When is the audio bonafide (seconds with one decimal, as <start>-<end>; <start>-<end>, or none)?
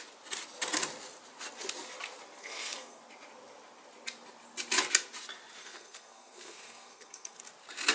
0.0-2.4; 3.0-5.6; 7.4-7.9